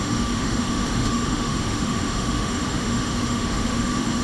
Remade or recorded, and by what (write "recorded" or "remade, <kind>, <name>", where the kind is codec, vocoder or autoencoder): remade, autoencoder, DAC-VAE